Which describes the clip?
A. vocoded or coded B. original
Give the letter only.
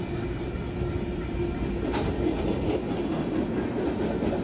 B